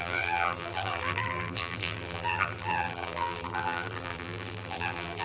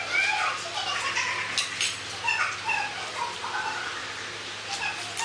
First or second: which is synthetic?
first